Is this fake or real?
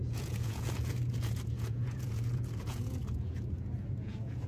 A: fake